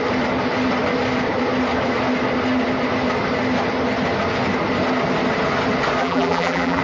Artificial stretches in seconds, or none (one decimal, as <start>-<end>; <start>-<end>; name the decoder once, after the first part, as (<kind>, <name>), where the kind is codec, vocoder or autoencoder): 6.0-6.8 (vocoder, BigVGAN v2)